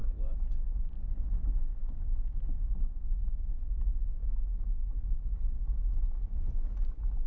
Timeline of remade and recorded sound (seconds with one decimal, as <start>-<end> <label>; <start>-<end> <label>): 0.0-0.5 remade; 0.5-1.8 recorded; 1.8-3.5 remade; 3.5-4.2 recorded; 4.2-5.3 remade; 5.3-7.3 recorded